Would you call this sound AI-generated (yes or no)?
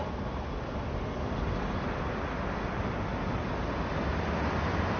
no